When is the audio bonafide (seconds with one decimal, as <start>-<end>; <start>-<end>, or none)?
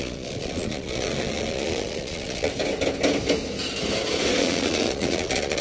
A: 2.5-4.4